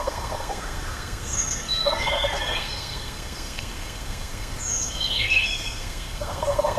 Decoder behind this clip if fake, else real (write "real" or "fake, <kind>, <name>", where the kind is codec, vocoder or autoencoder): fake, codec, SNAC